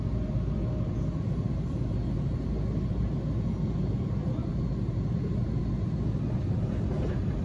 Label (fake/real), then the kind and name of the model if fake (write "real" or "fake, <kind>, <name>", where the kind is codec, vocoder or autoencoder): real